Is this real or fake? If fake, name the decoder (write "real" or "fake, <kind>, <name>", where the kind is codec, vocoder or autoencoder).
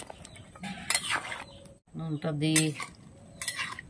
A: real